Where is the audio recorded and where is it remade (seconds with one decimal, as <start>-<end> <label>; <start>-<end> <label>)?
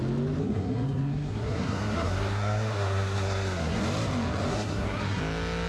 0.0-0.4 recorded; 0.4-3.8 remade; 3.8-4.5 recorded; 4.5-5.2 remade; 5.2-5.7 recorded